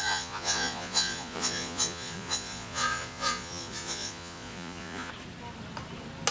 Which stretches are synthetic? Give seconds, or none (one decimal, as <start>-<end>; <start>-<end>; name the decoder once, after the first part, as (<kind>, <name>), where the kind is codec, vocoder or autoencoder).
0.0-5.1 (vocoder, Vocos)